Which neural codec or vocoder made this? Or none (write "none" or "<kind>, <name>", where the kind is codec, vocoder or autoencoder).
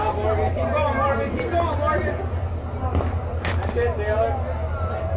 none